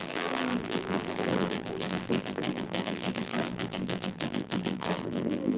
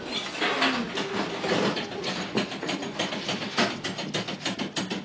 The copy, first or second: first